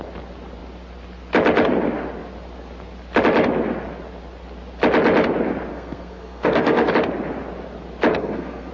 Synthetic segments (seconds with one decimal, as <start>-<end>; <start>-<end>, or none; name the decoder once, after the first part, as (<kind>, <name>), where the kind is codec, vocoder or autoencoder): 5.7-6.9 (codec, SNAC); 8.1-8.7